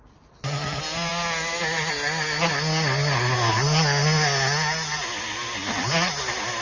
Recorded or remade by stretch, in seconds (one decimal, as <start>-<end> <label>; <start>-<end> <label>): 0.0-6.6 recorded